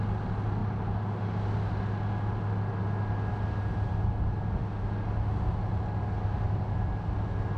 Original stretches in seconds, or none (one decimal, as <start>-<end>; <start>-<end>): 0.0-7.6